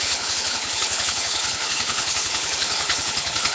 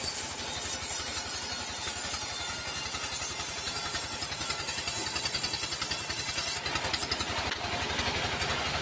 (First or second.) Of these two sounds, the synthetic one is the first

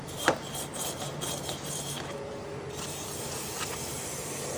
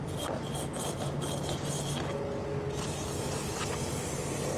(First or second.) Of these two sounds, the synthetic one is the first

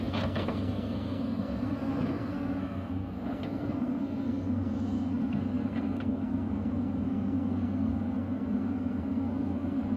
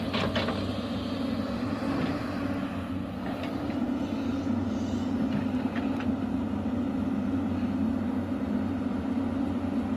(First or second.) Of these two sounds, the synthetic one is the first